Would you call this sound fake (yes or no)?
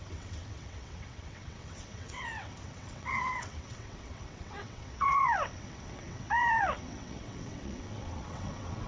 yes